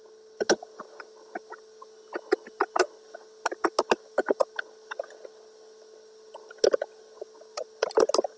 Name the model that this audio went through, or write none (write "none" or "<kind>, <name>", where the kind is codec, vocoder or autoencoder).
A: none